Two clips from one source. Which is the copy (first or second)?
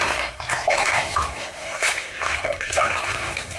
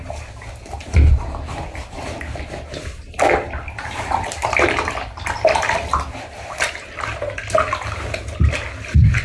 first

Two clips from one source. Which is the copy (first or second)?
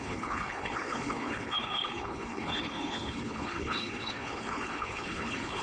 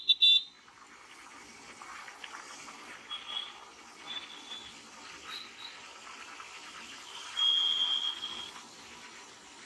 first